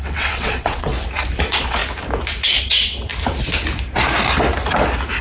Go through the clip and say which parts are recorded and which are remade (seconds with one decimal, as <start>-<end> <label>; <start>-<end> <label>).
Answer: 0.0-0.9 remade; 0.9-1.4 recorded; 1.4-1.8 remade; 1.8-2.6 recorded; 2.6-3.1 remade; 3.1-5.2 recorded